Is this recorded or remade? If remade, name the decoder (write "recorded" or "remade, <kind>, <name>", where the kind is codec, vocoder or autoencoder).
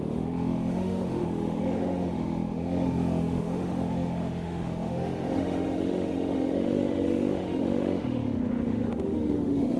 remade, autoencoder, DAC-VAE